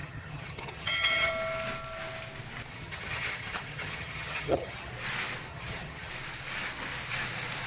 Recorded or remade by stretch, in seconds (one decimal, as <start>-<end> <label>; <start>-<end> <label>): 0.0-1.3 remade; 1.3-2.7 recorded; 2.7-4.9 remade; 4.9-5.5 recorded; 5.5-6.1 remade; 6.1-7.7 recorded